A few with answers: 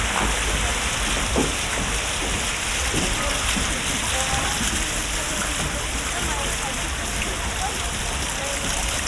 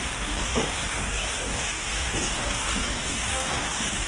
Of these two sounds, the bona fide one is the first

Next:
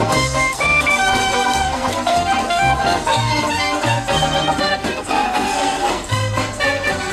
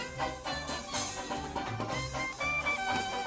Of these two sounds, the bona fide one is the second